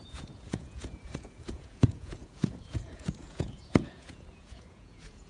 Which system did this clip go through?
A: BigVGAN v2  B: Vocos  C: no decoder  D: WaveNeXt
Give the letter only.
B